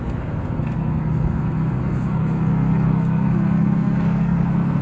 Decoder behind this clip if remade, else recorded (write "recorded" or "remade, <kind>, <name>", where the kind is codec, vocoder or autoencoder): remade, codec, SNAC